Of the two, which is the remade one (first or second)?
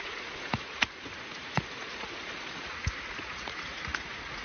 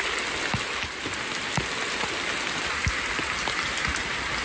first